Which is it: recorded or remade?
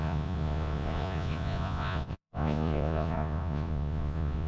remade